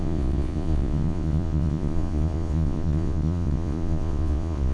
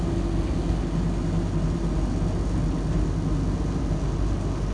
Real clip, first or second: second